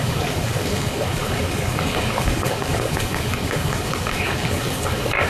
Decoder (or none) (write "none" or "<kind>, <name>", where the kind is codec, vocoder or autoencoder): codec, DAC